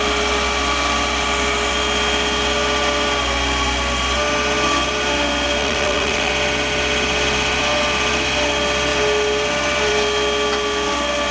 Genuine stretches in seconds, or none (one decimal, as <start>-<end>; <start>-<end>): 0.0-5.6; 6.3-11.3